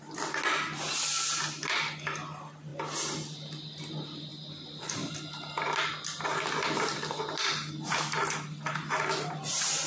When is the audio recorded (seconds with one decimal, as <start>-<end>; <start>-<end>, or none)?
0.0-9.9